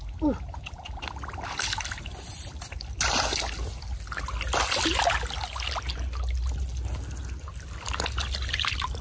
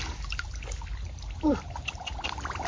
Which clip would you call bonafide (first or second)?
first